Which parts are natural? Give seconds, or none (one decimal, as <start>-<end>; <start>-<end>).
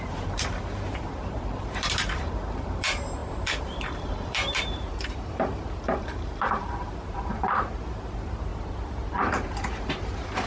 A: 8.5-9.7